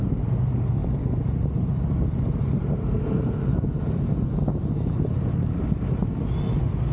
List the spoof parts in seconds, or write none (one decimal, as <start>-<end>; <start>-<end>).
0.8-4.6